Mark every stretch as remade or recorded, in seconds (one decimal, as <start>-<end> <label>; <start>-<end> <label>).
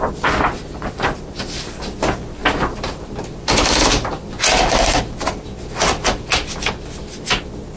0.0-7.8 recorded